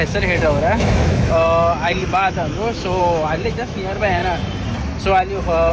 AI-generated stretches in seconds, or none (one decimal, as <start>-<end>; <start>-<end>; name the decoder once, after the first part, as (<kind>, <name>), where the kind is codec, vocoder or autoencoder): 0.0-4.2 (autoencoder, DAC-VAE)